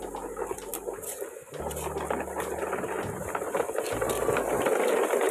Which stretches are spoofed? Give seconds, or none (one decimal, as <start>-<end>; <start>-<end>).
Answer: none